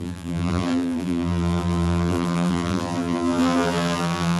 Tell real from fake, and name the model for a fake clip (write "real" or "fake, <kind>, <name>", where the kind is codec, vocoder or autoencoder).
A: fake, vocoder, BigVGAN v2